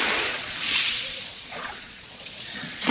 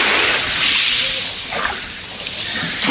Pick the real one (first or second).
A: second